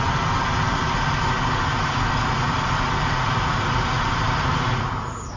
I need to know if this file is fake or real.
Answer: real